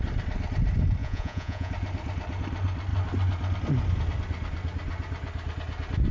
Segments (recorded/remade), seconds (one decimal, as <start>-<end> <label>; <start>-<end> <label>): 0.0-1.0 recorded; 1.0-1.7 remade; 1.7-6.1 recorded